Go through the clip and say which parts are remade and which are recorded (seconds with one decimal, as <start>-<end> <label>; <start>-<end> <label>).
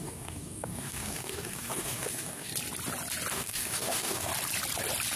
0.0-2.5 remade; 2.5-3.3 recorded; 3.3-4.3 remade; 4.3-5.2 recorded